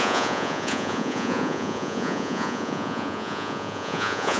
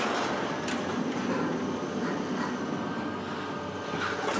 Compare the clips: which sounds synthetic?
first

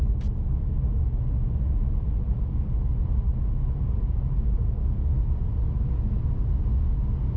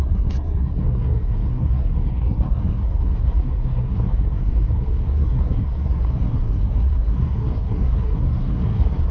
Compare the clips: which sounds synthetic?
second